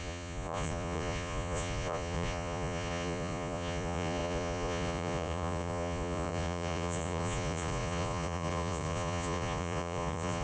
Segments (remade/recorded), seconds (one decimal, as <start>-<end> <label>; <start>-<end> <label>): 0.0-10.4 remade